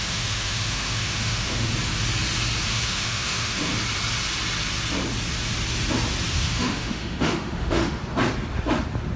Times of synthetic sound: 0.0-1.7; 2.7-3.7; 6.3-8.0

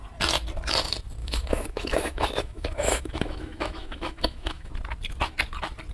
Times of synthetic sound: 1.2-4.7

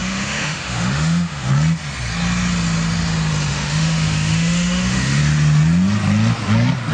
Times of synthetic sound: 0.0-1.5; 3.5-5.2

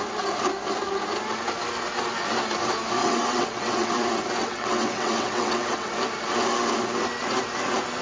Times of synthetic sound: 3.0-3.9; 4.4-5.9

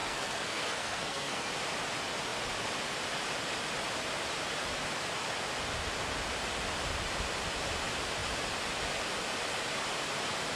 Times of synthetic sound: 0.0-1.5

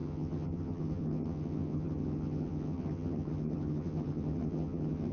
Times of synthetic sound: 0.0-5.1